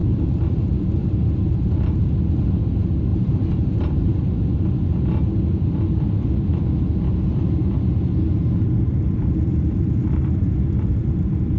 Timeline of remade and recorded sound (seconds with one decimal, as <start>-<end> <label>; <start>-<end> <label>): 0.0-0.6 remade; 0.6-1.0 recorded; 1.0-2.1 remade; 2.1-3.1 recorded; 3.1-4.1 remade; 4.1-9.5 recorded; 9.5-10.2 remade; 10.2-11.6 recorded